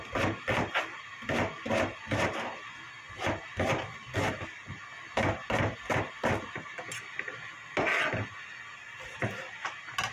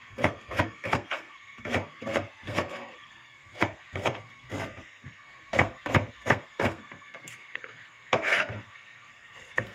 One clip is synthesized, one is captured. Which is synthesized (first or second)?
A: second